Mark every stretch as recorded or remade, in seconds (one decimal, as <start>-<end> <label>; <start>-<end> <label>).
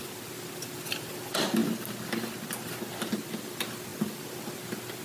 0.0-5.0 recorded